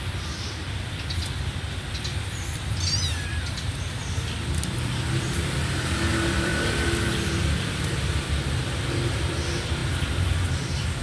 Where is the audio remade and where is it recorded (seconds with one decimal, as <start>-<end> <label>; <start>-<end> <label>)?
0.0-11.0 remade